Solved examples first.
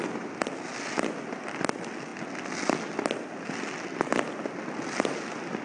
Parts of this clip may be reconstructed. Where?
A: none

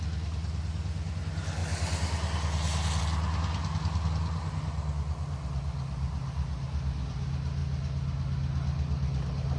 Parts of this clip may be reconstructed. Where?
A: none

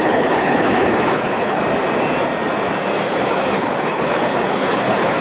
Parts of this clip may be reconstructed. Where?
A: 0.0-1.6 (codec, HILCodec); 3.1-5.2

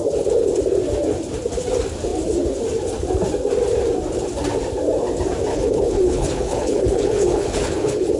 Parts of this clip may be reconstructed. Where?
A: 5.5-8.2 (codec, HILCodec)

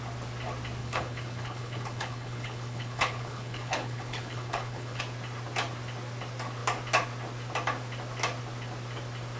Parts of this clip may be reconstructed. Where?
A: 0.8-5.0 (codec, HILCodec)

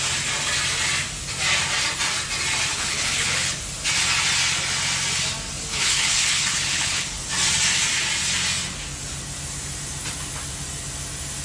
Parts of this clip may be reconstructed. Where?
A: 2.7-3.6 (codec, HILCodec); 5.7-7.2

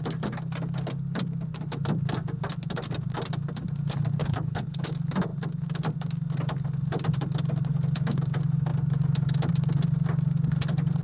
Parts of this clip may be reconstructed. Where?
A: 4.2-4.8 (codec, HILCodec)